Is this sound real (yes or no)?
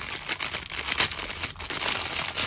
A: yes